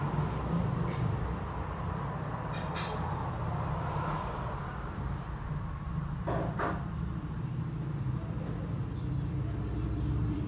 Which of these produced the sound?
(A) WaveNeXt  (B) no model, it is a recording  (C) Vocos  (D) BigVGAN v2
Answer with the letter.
D